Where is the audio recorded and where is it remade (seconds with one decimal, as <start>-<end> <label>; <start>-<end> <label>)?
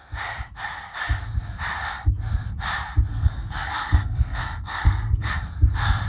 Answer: 0.0-3.1 recorded; 3.1-5.3 remade; 5.3-6.1 recorded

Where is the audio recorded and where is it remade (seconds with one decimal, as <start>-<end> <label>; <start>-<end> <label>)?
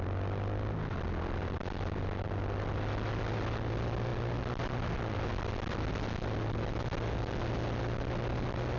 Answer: 0.0-8.8 recorded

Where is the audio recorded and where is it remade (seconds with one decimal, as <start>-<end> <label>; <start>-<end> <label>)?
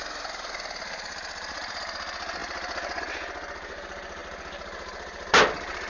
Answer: 0.0-1.8 remade; 1.8-4.2 recorded; 4.2-5.9 remade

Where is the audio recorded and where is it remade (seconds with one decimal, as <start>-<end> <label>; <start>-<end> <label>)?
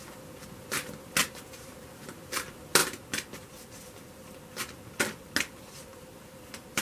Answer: 0.0-1.2 recorded; 1.2-1.8 remade; 1.8-6.8 recorded